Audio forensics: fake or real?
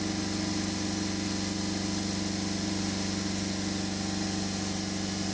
real